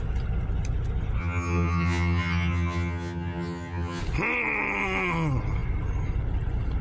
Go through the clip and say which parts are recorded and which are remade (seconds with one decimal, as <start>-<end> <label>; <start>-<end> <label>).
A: 0.0-1.2 recorded; 1.2-4.0 remade; 4.0-6.8 recorded